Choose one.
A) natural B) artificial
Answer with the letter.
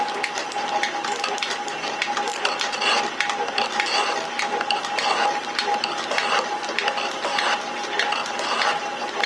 A